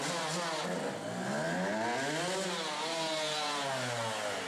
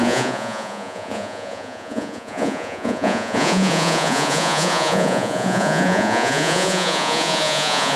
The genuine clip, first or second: first